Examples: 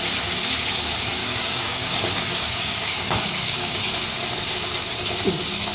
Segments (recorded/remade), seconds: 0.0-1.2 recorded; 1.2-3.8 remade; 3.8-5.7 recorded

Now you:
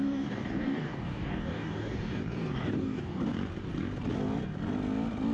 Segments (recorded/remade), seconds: 0.0-3.2 remade; 3.2-5.3 recorded